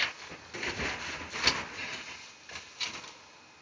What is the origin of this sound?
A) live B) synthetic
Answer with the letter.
A